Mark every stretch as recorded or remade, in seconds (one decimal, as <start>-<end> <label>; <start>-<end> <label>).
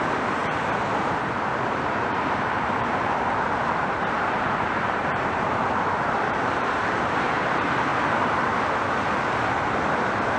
0.0-7.9 remade; 7.9-9.7 recorded; 9.7-10.4 remade